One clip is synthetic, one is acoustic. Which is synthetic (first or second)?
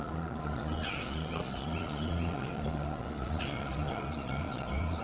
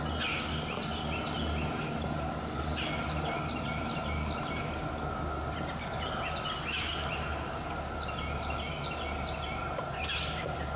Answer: first